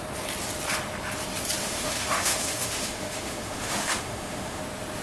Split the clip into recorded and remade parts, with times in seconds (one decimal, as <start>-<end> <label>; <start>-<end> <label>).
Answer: 0.0-1.6 recorded; 1.6-4.6 remade; 4.6-5.0 recorded